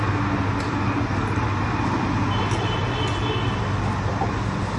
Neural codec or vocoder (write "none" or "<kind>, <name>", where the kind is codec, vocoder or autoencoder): none